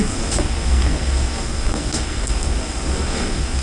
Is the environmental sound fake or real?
fake